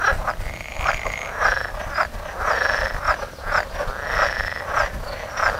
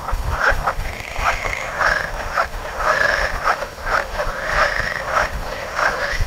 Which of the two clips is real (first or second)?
first